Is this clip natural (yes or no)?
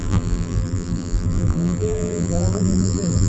no